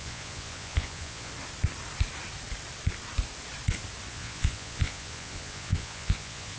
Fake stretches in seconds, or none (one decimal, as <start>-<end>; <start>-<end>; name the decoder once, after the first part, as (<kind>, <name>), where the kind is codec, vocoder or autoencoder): 0.0-1.3 (vocoder, Vocos); 4.1-6.6